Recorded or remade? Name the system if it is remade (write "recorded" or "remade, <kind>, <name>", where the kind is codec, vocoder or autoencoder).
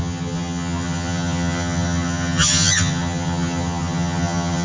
remade, vocoder, HiFi-GAN